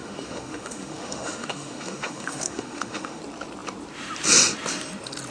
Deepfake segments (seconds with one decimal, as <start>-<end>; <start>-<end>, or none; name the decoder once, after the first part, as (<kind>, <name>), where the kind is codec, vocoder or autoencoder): 0.0-3.2 (autoencoder, DAC-VAE)

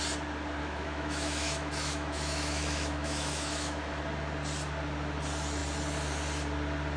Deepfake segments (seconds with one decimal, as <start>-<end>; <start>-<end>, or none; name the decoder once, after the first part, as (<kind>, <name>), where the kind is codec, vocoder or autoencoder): 0.6-4.0 (autoencoder, DAC-VAE)

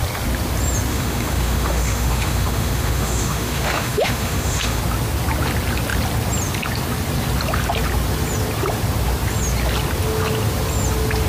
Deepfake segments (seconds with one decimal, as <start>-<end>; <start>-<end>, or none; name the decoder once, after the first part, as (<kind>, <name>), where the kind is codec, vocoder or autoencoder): 0.9-4.8 (autoencoder, DAC-VAE)

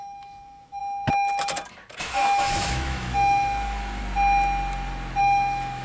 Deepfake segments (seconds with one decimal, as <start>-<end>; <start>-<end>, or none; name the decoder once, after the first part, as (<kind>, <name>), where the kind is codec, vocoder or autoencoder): 0.0-0.8 (autoencoder, DAC-VAE); 2.0-4.0; 5.2-5.8

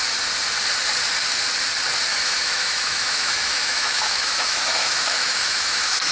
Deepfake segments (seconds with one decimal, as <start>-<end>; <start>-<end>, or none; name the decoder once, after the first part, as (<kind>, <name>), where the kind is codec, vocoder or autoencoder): 2.1-6.1 (autoencoder, DAC-VAE)

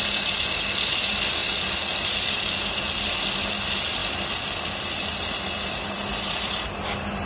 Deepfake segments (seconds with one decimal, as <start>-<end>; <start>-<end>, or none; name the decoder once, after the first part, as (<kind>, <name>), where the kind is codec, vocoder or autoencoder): none

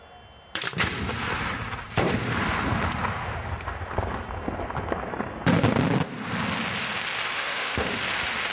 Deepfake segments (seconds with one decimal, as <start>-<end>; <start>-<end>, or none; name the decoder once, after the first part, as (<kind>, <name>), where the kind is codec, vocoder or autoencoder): 7.3-8.0 (autoencoder, DAC-VAE)

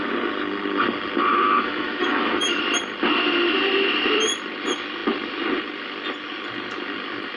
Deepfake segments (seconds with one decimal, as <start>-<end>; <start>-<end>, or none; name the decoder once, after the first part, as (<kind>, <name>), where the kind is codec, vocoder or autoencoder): 1.3-2.6 (autoencoder, DAC-VAE)